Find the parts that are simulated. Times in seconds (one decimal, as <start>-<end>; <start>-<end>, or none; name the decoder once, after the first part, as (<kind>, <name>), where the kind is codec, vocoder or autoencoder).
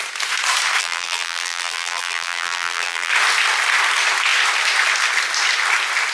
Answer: 0.8-3.1 (vocoder, BigVGAN v2)